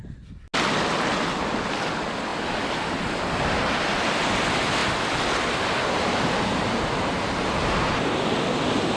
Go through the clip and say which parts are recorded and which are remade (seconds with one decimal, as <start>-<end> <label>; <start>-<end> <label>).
0.0-9.0 recorded